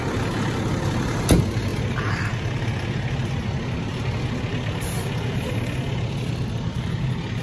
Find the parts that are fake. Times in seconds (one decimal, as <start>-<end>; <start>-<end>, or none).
none

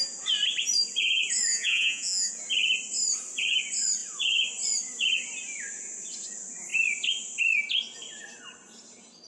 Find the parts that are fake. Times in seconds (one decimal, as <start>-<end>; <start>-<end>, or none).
1.5-2.3

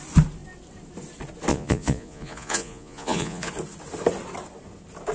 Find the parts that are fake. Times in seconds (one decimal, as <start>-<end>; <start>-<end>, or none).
1.5-3.5

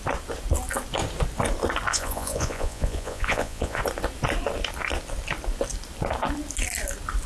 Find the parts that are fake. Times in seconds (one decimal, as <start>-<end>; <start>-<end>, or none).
1.9-3.8

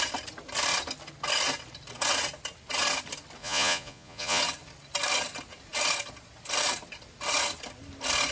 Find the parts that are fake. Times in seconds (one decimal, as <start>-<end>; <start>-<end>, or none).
3.4-4.4

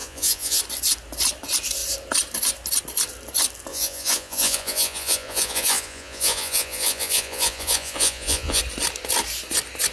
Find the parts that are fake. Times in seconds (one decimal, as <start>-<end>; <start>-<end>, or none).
0.0-0.6; 3.7-8.6

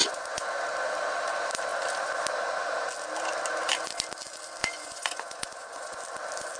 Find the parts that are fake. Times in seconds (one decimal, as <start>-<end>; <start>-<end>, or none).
0.0-0.6; 4.6-6.0